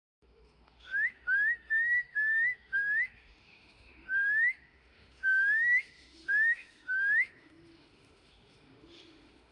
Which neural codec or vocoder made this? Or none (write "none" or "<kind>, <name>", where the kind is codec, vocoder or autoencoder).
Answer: autoencoder, DAC-VAE